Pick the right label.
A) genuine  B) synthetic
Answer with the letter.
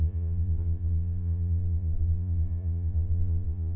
B